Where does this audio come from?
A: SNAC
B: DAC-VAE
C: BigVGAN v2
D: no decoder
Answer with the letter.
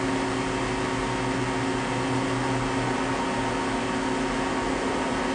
D